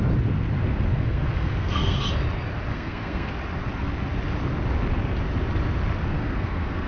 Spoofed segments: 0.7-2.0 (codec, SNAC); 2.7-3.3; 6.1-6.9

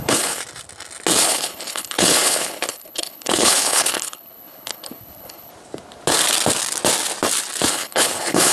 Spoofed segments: 0.0-0.4 (codec, HILCodec); 1.2-5.5; 7.7-8.5

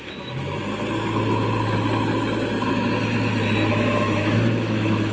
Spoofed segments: 0.0-0.6 (autoencoder, DAC-VAE); 3.7-5.1